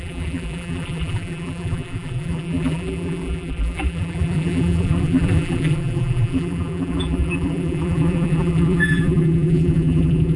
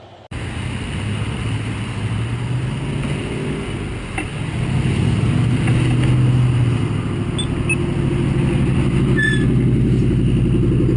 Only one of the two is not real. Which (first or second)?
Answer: first